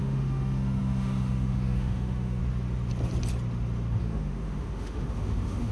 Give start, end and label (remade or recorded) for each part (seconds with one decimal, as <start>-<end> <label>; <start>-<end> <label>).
0.0-2.4 remade; 2.4-4.0 recorded; 4.0-5.7 remade